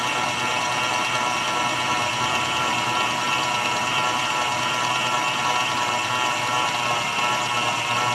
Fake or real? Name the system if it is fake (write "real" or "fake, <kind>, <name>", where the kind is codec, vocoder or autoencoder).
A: real